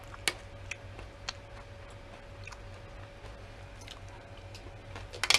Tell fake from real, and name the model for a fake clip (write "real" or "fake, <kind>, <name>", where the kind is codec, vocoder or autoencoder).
real